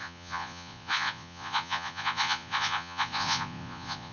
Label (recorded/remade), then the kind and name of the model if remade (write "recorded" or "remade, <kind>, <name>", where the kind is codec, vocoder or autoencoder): remade, vocoder, Vocos